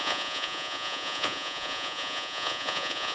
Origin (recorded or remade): remade